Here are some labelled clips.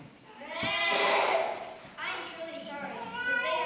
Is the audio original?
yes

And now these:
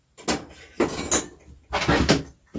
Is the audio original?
yes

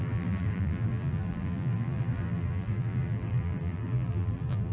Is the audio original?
no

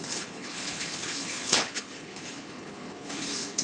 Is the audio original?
no